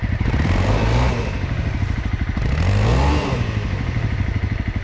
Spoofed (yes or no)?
no